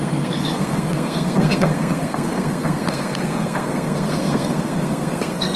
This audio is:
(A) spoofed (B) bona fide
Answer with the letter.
A